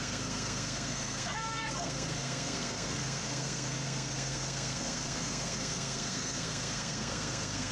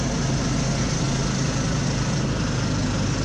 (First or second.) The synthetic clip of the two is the first